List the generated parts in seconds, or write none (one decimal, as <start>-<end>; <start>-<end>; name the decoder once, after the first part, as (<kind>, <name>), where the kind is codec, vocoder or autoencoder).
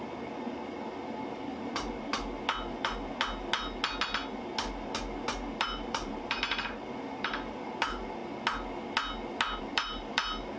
0.0-2.1 (vocoder, BigVGAN v2); 5.6-8.2; 9.6-10.6